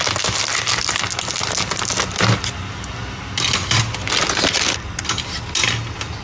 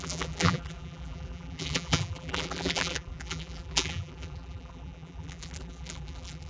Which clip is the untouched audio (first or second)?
first